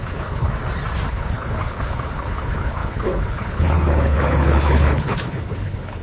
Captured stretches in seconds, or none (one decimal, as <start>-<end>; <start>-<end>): 0.5-1.1